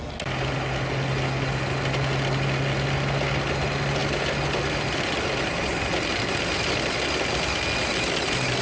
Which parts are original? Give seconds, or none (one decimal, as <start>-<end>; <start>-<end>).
0.0-8.6